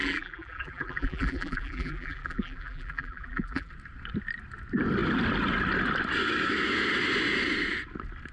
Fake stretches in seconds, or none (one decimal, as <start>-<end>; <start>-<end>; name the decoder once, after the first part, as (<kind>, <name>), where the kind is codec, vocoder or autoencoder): 0.0-3.7 (vocoder, BigVGAN v2)